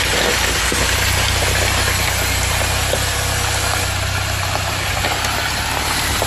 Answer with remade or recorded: recorded